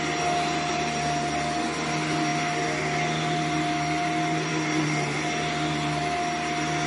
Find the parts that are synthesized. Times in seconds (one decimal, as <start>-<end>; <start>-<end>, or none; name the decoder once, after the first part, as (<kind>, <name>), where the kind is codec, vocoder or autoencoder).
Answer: none